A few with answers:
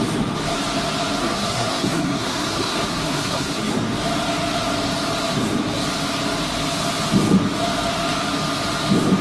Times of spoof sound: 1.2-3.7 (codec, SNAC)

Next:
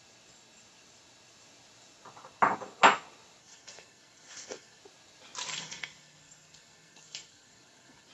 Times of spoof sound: 3.4-4.8 (codec, SNAC); 5.5-8.1

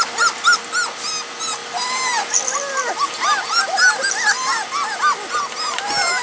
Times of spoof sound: none

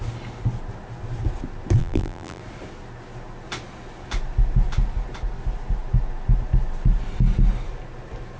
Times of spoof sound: 1.8-2.4 (vocoder, BigVGAN v2)

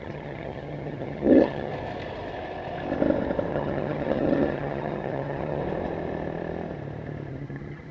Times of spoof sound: 0.0-1.7 (vocoder, HiFi-GAN); 3.5-5.6; 7.3-7.9

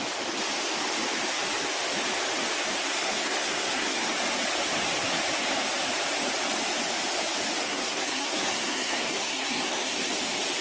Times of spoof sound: 2.8-4.1 (codec, SNAC); 7.6-10.1

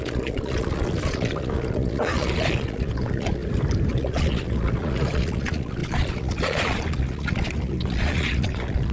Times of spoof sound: 0.0-3.4 (vocoder, Vocos); 3.9-8.9

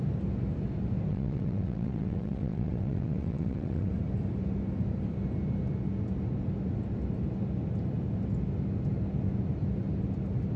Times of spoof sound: 1.1-3.9 (vocoder, WaveNeXt)